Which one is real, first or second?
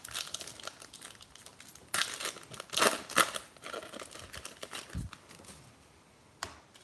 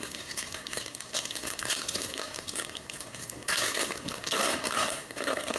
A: first